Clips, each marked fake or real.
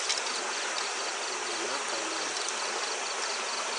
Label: real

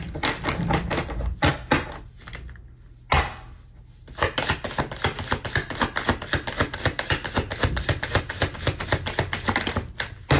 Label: real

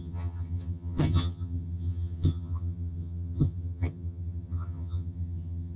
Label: fake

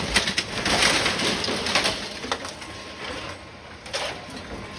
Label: real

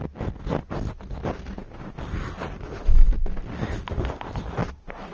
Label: real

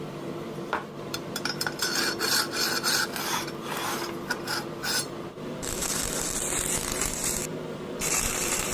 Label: fake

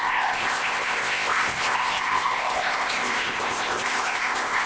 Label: fake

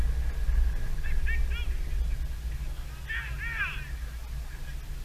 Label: real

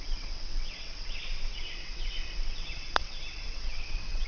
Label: fake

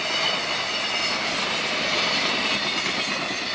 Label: real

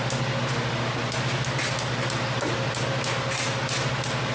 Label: real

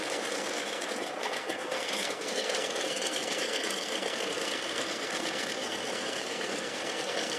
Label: fake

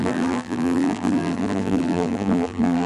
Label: fake